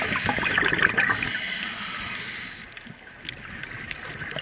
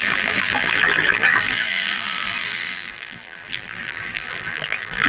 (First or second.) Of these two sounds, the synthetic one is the second